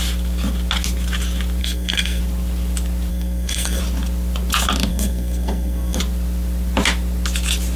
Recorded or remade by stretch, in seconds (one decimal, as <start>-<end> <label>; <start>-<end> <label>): 0.0-1.6 recorded; 1.6-2.2 remade; 2.2-3.1 recorded; 3.1-3.8 remade; 3.8-4.9 recorded; 4.9-6.0 remade; 6.0-7.8 recorded